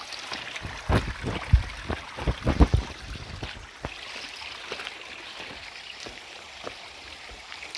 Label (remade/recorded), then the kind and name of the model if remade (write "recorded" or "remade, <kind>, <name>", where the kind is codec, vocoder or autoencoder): recorded